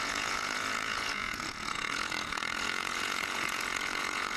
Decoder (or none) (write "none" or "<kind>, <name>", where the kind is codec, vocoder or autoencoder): vocoder, Vocos